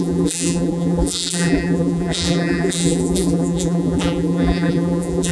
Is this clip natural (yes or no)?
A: no